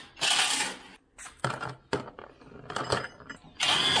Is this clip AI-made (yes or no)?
no